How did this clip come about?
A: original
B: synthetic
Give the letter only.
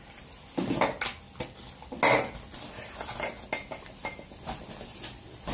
A